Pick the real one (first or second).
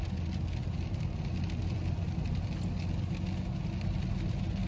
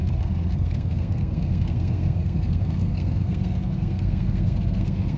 first